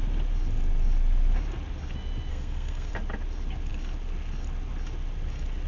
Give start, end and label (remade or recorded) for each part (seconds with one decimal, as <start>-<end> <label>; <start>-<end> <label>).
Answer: 0.0-2.3 recorded; 2.3-2.9 remade; 2.9-5.7 recorded